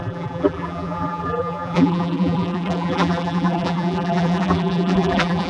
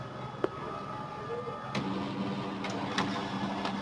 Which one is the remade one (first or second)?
first